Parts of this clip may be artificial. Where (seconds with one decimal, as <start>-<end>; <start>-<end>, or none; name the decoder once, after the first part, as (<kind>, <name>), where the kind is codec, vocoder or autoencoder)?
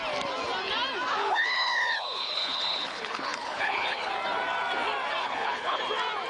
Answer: 1.2-4.1 (codec, HILCodec); 5.2-5.8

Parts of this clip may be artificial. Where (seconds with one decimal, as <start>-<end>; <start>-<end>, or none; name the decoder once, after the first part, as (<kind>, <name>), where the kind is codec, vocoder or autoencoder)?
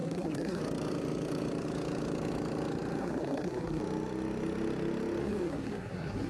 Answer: 0.0-0.6 (codec, SNAC); 3.0-3.8; 5.2-6.3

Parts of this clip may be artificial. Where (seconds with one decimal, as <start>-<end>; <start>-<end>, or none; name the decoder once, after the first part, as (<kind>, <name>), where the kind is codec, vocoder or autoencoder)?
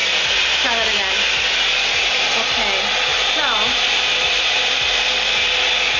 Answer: 3.1-5.3 (vocoder, BigVGAN v2)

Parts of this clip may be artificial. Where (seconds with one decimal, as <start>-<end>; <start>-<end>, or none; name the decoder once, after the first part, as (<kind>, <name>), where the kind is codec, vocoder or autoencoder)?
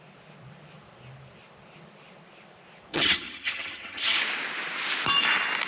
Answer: 2.9-4.2 (vocoder, HiFi-GAN)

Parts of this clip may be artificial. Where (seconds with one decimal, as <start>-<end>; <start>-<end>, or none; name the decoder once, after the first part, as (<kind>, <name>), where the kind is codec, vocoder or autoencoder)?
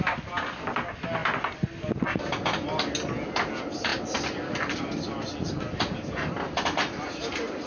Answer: none